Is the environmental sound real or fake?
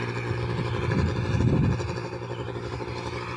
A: real